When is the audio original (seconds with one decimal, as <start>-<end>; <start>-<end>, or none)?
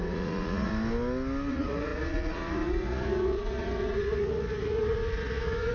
0.7-1.5